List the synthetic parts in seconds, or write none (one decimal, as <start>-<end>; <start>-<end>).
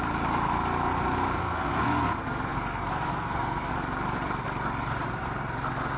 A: 1.4-3.7